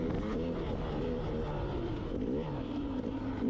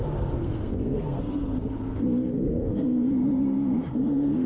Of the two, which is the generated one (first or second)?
second